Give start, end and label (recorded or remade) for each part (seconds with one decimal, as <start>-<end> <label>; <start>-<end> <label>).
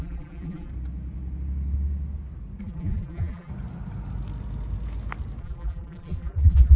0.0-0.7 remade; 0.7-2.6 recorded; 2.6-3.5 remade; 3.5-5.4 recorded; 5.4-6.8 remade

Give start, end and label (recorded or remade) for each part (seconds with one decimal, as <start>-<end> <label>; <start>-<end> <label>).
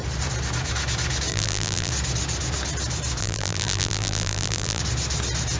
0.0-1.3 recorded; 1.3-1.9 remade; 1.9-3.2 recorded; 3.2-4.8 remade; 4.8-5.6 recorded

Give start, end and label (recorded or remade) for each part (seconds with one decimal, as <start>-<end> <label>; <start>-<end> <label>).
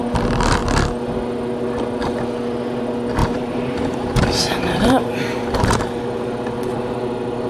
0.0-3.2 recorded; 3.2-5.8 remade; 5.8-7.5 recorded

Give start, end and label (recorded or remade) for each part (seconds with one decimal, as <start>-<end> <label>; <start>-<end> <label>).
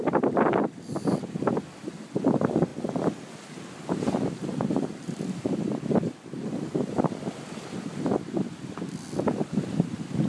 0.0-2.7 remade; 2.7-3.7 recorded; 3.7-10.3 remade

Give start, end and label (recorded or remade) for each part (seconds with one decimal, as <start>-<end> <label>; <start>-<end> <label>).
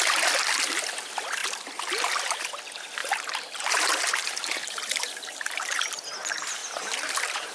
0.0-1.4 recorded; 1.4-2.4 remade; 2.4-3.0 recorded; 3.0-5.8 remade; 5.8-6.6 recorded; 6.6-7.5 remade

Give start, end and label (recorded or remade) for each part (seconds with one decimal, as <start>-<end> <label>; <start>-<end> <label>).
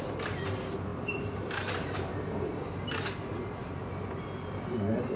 0.0-0.9 recorded; 0.9-3.0 remade; 3.0-3.6 recorded; 3.6-4.2 remade; 4.2-5.2 recorded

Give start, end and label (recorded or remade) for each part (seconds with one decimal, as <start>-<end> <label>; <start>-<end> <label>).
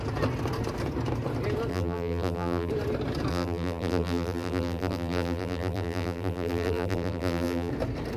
0.0-1.7 recorded; 1.7-2.7 remade; 2.7-3.3 recorded; 3.3-7.7 remade; 7.7-8.2 recorded